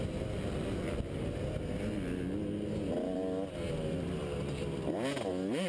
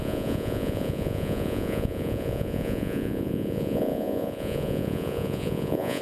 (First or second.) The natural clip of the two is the first